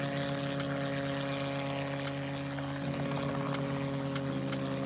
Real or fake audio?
real